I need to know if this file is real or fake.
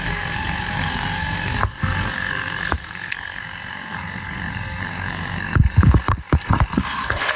fake